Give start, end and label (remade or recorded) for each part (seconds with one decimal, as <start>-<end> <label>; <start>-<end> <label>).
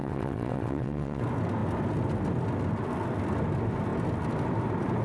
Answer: 0.0-1.2 remade; 1.2-5.0 recorded